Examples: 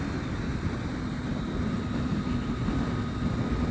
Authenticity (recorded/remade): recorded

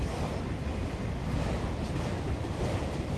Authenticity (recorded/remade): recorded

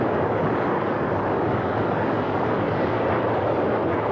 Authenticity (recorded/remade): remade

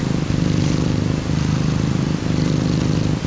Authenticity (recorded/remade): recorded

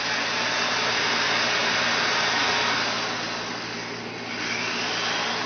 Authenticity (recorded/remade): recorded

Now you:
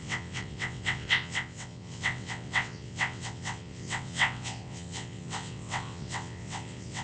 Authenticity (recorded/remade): remade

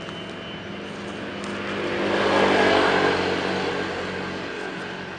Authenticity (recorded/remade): recorded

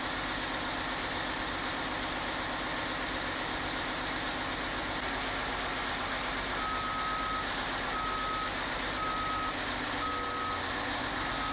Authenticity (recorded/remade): recorded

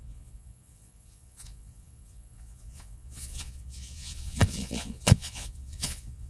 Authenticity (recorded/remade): remade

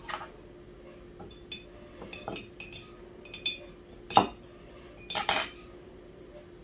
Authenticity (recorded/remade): recorded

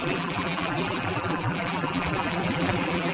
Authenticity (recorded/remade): remade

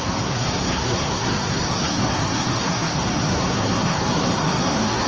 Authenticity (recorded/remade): remade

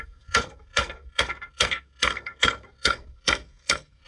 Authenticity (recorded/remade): remade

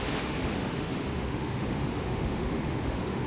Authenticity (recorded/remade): remade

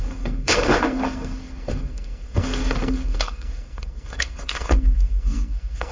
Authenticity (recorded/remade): remade